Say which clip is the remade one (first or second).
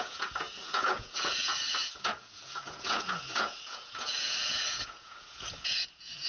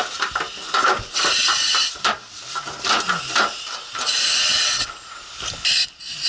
first